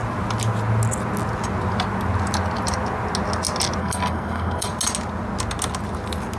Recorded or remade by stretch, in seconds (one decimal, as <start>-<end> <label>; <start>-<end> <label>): 0.0-3.8 recorded; 3.8-4.7 remade; 4.7-6.4 recorded